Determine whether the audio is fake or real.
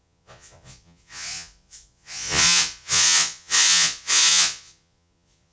fake